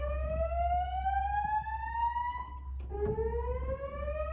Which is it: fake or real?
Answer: real